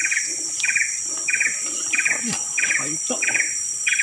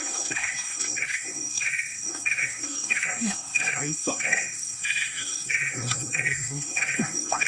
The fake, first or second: second